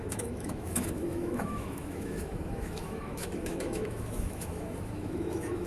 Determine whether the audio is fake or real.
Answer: fake